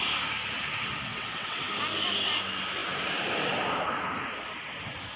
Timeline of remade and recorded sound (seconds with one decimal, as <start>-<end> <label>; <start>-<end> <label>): 0.0-1.1 recorded; 1.1-1.6 remade; 1.6-5.2 recorded